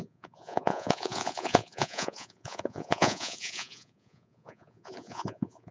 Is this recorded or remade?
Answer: remade